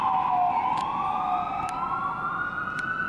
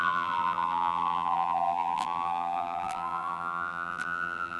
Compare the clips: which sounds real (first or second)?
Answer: first